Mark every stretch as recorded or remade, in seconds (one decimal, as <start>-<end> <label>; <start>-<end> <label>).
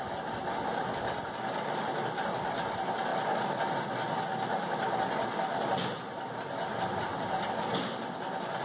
0.0-8.6 recorded